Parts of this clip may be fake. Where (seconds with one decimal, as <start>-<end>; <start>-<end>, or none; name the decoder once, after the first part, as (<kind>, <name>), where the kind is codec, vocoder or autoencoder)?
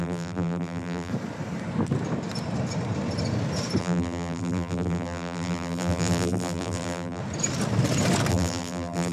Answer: 0.0-1.1 (vocoder, BigVGAN v2); 3.8-7.2; 8.3-9.1